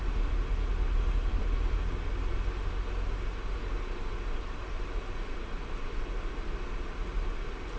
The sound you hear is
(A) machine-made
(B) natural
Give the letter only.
B